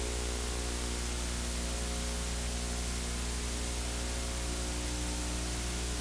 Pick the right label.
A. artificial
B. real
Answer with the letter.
B